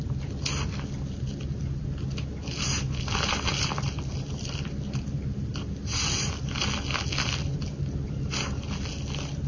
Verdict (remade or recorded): recorded